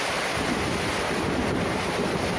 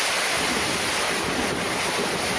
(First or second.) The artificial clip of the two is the first